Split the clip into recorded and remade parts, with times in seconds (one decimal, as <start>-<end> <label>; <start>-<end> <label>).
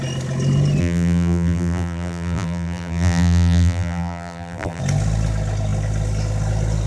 0.0-0.8 recorded; 0.8-4.8 remade; 4.8-6.9 recorded